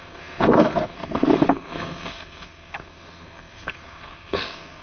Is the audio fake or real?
fake